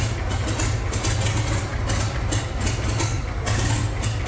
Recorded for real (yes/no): yes